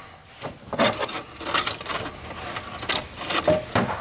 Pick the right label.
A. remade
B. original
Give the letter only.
B